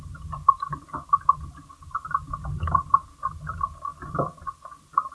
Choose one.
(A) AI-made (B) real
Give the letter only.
B